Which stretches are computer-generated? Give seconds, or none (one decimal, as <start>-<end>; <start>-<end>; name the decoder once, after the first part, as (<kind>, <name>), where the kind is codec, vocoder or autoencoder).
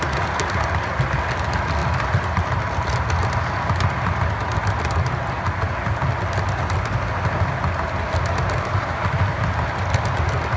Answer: none